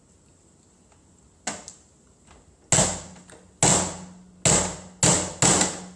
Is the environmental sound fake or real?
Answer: real